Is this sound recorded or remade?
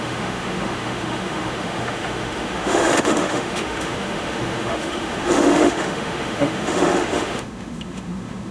remade